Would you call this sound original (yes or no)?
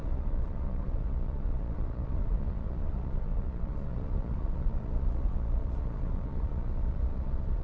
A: no